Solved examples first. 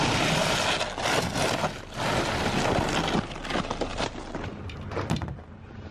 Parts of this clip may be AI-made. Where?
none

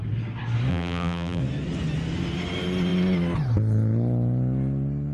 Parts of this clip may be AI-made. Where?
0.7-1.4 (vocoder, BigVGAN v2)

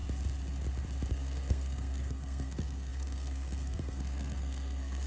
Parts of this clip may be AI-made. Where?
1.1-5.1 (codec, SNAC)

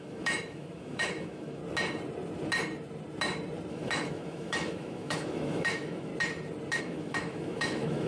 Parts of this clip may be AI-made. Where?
0.0-1.6 (autoencoder, DAC-VAE); 3.7-6.1; 6.8-8.1

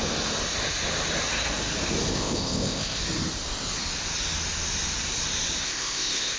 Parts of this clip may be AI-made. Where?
2.1-3.0 (codec, ZipCodec); 5.6-6.4